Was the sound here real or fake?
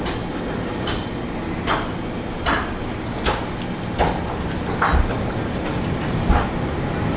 real